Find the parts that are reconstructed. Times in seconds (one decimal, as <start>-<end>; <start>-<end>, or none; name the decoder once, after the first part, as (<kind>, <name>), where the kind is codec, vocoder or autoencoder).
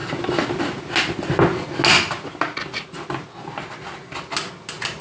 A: none